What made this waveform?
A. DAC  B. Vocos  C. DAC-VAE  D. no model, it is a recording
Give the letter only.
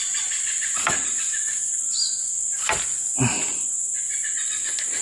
D